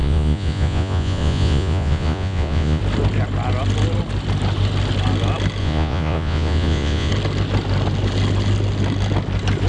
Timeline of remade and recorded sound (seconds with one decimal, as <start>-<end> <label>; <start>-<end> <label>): 0.0-2.8 remade; 2.8-5.6 recorded; 5.6-7.1 remade; 7.1-9.7 recorded